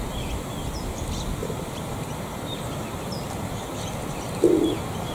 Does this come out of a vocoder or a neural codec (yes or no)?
no